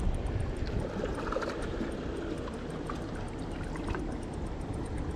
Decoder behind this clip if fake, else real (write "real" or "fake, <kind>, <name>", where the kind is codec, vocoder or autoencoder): real